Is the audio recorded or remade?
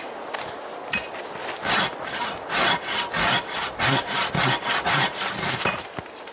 recorded